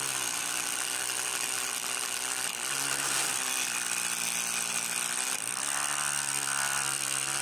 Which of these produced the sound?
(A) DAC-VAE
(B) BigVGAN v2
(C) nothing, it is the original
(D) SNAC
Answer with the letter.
B